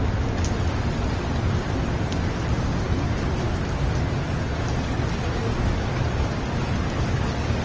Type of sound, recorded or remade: recorded